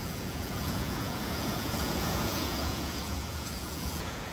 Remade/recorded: remade